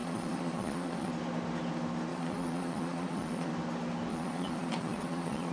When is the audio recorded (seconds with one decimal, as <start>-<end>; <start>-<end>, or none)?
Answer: 1.1-2.1; 3.5-4.1